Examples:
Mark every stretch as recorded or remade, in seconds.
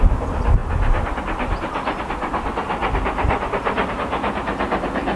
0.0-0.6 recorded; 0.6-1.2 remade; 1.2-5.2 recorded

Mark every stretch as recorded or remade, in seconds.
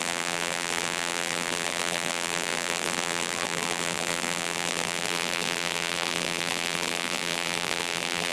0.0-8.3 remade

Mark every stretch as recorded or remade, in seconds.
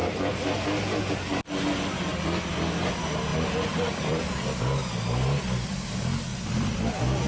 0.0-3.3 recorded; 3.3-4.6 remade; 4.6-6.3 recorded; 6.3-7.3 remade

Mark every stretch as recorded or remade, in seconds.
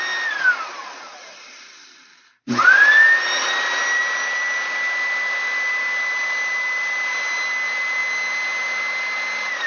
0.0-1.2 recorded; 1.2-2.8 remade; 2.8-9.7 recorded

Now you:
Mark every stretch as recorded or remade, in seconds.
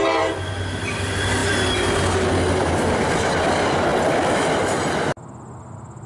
0.0-6.1 recorded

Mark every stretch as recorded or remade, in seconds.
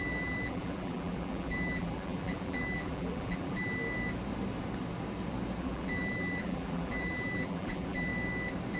0.0-3.8 remade; 3.8-5.6 recorded; 5.6-8.1 remade; 8.1-8.8 recorded